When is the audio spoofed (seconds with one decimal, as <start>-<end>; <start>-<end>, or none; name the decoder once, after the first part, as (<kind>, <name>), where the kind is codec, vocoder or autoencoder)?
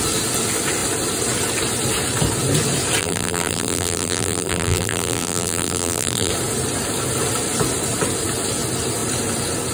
3.0-6.3 (vocoder, BigVGAN v2)